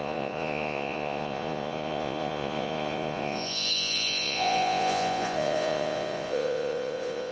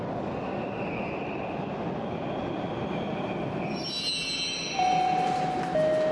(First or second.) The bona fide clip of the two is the second